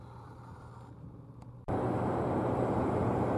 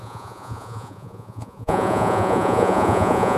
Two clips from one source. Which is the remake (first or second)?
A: second